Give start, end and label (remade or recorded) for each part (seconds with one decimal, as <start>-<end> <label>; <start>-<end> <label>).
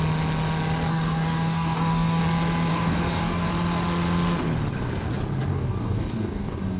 0.0-0.9 recorded; 0.9-2.2 remade; 2.2-2.7 recorded; 2.7-3.5 remade; 3.5-5.5 recorded; 5.5-6.8 remade